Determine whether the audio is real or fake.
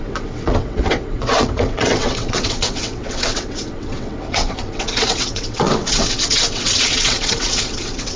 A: fake